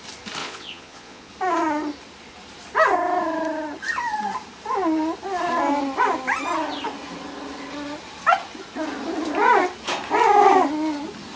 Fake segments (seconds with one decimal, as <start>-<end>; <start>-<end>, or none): 0.4-1.3